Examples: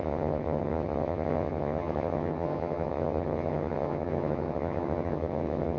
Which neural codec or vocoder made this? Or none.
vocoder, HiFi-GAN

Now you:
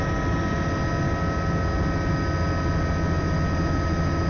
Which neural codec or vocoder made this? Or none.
none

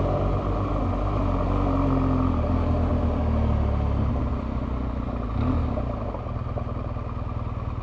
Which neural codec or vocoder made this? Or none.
none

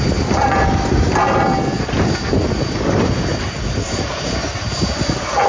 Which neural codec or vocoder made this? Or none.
none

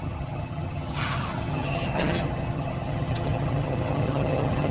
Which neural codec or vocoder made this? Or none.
vocoder, HiFi-GAN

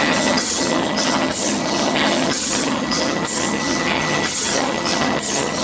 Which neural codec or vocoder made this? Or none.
vocoder, HiFi-GAN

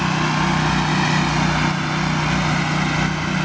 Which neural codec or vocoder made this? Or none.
none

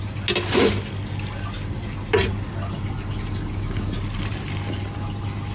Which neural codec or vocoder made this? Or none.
none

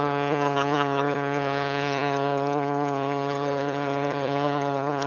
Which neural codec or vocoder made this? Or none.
vocoder, HiFi-GAN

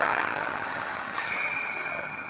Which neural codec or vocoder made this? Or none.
vocoder, HiFi-GAN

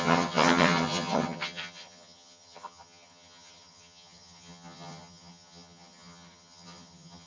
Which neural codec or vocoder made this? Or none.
vocoder, HiFi-GAN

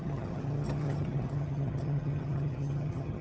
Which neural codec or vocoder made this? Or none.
vocoder, HiFi-GAN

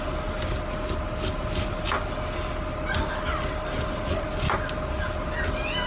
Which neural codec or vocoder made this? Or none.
none